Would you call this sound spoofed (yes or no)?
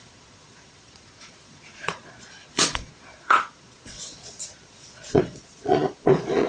yes